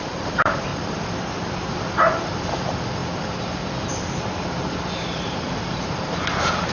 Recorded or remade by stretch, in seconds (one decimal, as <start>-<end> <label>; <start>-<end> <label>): 0.0-0.7 remade; 0.7-2.5 recorded; 2.5-6.7 remade